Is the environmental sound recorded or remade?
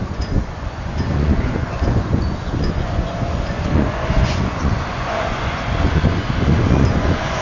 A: remade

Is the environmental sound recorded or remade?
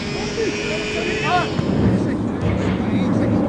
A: recorded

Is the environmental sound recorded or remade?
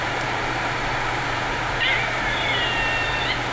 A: recorded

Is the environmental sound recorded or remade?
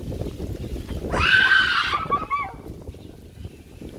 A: recorded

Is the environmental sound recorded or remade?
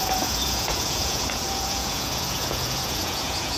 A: remade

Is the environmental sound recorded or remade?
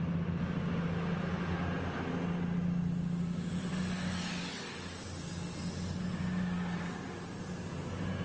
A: recorded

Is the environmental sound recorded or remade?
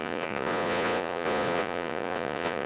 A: remade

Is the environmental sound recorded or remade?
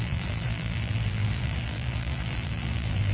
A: remade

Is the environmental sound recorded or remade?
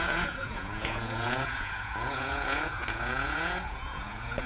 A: remade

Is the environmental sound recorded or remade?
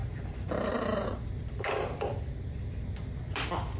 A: recorded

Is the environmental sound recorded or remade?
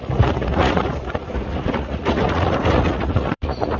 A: remade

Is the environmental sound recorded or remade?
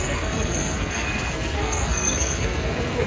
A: remade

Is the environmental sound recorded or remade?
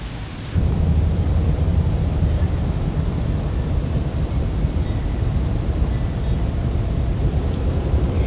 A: remade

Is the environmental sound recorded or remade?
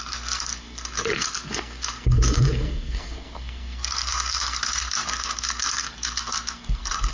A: remade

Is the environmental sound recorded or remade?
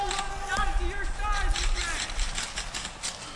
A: recorded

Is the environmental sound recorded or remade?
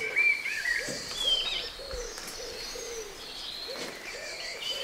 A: remade